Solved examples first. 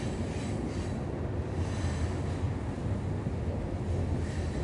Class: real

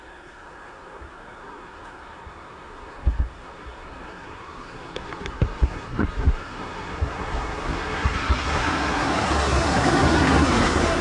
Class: fake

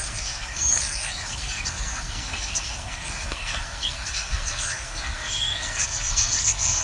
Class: fake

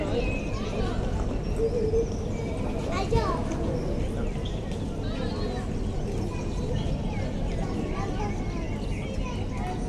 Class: real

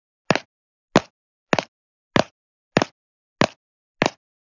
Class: real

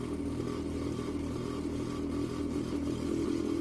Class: real